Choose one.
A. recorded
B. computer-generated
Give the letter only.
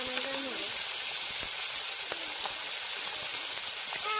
A